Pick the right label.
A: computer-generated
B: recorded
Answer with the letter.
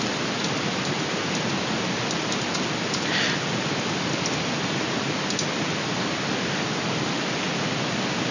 B